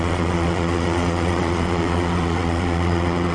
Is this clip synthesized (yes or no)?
yes